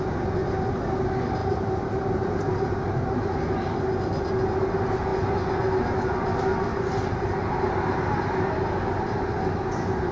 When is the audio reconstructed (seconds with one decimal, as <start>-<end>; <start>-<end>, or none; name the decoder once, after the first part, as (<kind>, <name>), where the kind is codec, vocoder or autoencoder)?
1.4-3.4 (vocoder, BigVGAN v2); 6.7-8.5